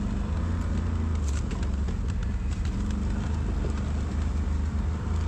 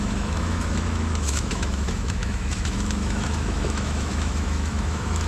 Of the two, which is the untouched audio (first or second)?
first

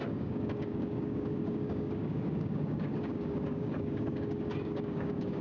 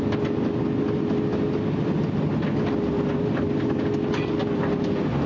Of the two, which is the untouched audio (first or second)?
second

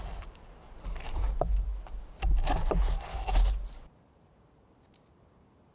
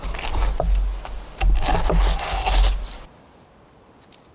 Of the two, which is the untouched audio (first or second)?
second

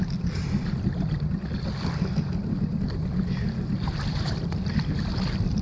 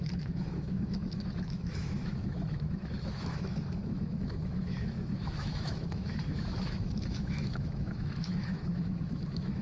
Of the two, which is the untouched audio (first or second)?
first